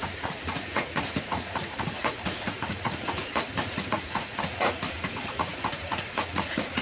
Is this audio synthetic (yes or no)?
yes